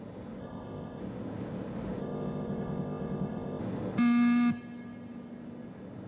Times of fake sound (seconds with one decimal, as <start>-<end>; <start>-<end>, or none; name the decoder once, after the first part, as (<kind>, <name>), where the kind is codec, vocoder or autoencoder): 0.4-1.0 (codec, ZipCodec); 2.0-3.6